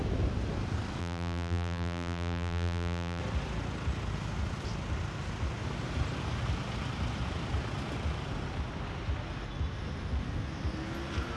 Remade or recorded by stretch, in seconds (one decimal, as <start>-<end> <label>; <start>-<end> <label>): 0.0-1.0 recorded; 1.0-3.2 remade; 3.2-11.4 recorded